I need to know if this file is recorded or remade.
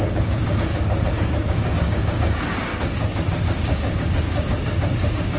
remade